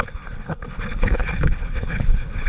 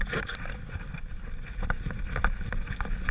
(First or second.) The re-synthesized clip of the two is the first